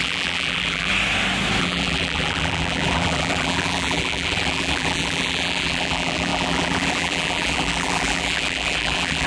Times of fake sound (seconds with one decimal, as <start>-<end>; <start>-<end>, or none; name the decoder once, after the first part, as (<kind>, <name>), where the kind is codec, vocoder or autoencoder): 0.0-0.9 (vocoder, BigVGAN v2); 1.6-9.3